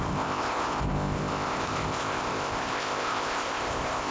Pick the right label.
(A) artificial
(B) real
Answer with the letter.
A